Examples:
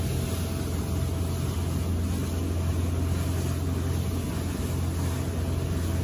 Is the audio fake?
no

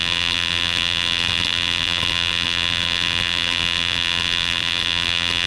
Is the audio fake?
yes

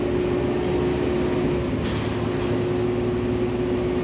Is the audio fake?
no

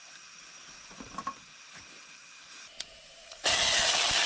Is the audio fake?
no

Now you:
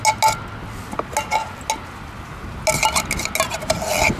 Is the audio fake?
no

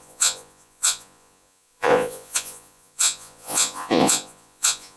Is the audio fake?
yes